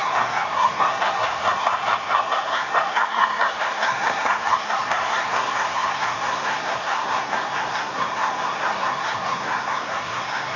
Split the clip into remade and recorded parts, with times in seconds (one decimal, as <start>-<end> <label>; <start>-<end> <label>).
0.0-10.6 remade